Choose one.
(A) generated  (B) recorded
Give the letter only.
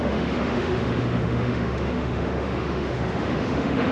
A